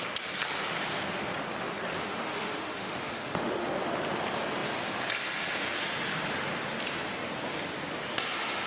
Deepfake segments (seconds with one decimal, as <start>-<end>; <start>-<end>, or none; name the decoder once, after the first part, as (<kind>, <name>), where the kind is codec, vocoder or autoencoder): 2.0-3.9 (autoencoder, DAC-VAE)